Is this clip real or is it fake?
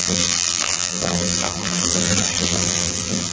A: fake